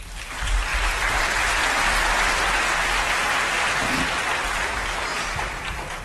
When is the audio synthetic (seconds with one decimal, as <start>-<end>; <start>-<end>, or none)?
5.1-6.0